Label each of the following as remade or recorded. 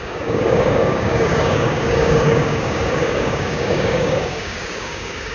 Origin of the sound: remade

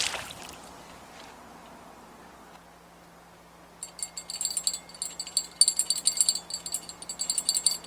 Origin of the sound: recorded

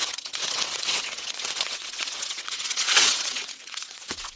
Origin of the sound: remade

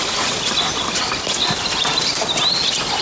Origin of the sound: recorded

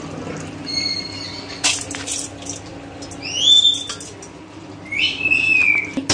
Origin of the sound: recorded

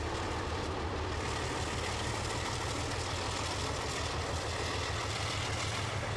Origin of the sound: recorded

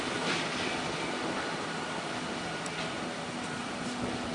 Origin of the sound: recorded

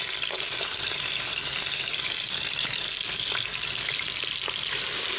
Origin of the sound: recorded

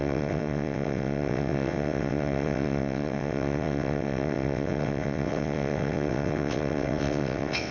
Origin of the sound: remade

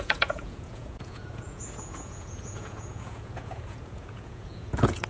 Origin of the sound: remade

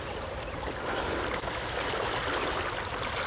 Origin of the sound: recorded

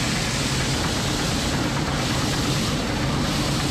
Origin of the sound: recorded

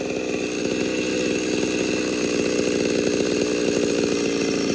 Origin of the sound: recorded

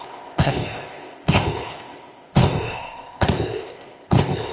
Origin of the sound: remade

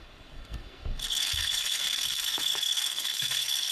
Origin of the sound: remade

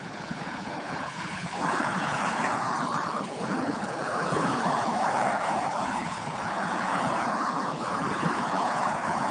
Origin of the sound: remade